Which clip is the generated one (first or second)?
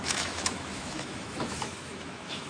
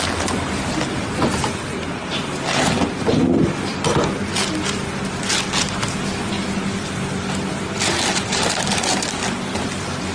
first